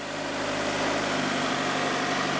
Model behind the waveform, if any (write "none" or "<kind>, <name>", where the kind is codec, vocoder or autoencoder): none